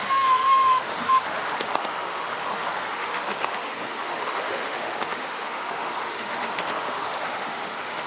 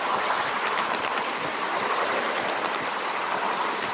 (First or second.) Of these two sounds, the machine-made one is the first